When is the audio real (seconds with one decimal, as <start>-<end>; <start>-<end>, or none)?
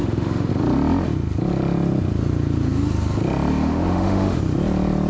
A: 0.5-3.5; 4.4-5.1